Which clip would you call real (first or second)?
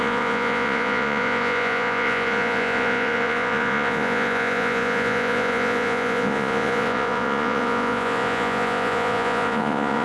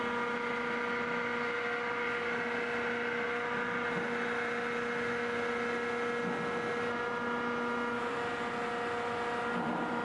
second